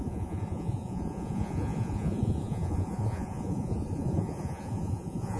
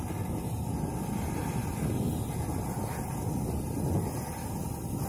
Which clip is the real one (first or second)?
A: second